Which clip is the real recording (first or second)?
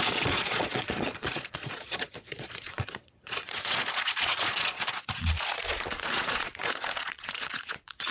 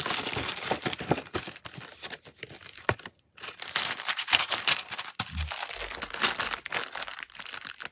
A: second